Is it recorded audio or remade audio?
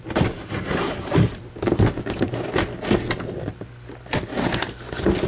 recorded